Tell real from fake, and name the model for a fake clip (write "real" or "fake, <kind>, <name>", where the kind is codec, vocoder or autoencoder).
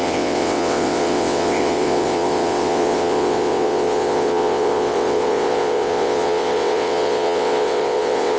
fake, vocoder, WaveNeXt